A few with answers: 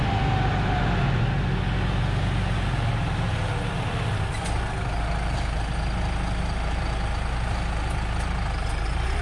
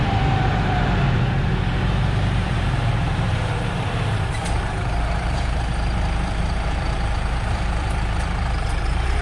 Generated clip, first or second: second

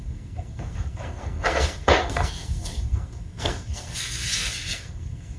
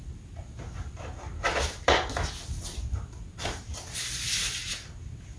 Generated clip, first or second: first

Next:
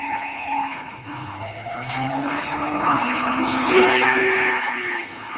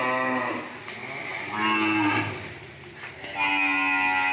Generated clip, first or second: first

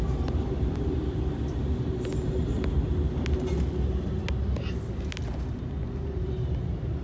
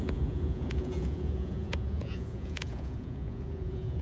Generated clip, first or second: second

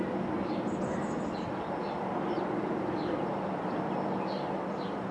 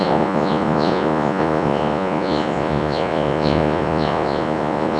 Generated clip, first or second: second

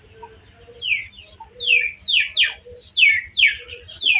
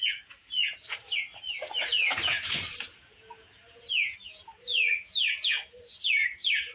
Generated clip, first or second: second